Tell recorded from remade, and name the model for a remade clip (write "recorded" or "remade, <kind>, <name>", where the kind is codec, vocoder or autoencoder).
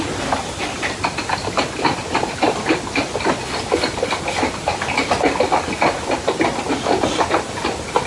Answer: recorded